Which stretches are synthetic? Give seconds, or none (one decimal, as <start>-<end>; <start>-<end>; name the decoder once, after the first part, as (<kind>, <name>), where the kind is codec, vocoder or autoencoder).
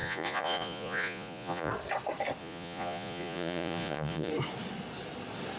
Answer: 0.0-1.7 (vocoder, Vocos); 2.4-4.3